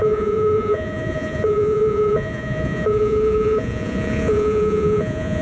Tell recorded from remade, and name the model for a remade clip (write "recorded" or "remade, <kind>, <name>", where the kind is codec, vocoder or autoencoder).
remade, vocoder, Vocos